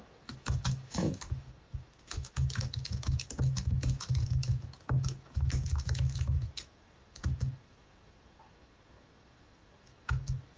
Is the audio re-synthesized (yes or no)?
yes